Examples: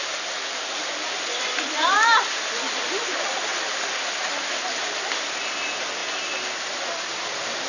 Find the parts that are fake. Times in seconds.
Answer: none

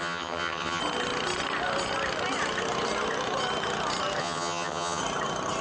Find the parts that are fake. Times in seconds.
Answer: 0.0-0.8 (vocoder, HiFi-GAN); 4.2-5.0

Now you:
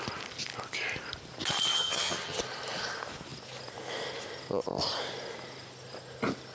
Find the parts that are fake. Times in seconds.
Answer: 1.7-2.4 (vocoder, HiFi-GAN)

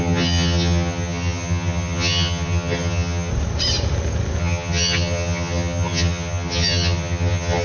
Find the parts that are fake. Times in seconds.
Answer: 0.0-3.3 (vocoder, HiFi-GAN); 4.4-7.6